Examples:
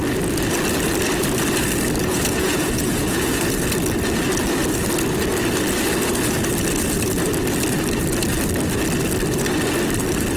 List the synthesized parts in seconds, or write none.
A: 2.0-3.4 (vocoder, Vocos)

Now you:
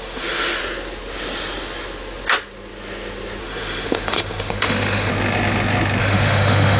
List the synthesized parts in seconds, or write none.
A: 0.0-0.6 (autoencoder, DAC-VAE); 3.4-5.1; 6.0-6.8